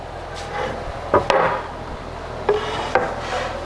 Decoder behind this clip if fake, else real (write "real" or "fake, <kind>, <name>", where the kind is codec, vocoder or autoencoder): real